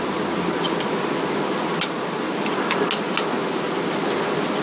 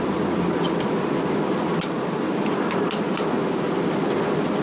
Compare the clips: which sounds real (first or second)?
first